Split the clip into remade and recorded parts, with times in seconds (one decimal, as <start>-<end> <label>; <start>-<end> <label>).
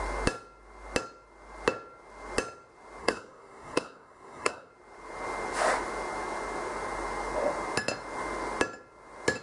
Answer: 0.0-3.0 recorded; 3.0-4.7 remade; 4.7-9.4 recorded